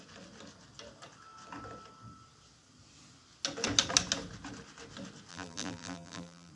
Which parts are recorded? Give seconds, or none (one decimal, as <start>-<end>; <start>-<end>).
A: 0.0-5.3